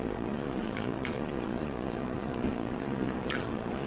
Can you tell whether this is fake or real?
fake